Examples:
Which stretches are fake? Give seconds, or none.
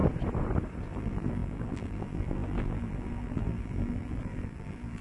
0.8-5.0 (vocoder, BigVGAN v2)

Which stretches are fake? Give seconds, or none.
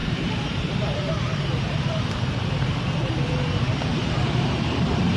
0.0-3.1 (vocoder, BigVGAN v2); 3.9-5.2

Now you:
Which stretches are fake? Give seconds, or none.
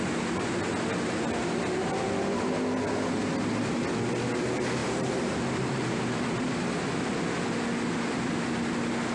4.8-6.4 (vocoder, BigVGAN v2)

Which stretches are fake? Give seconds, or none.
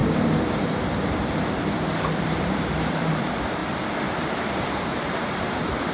2.4-3.6 (vocoder, BigVGAN v2); 4.6-5.9